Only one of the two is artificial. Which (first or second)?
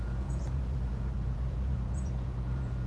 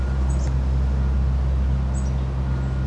first